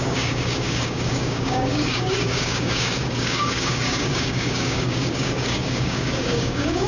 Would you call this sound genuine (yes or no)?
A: no